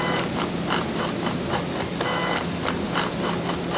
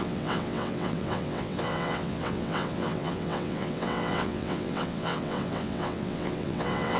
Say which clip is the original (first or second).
first